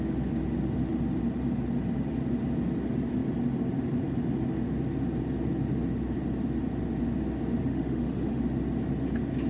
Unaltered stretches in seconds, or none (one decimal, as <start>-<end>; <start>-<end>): 0.0-7.7; 8.4-9.5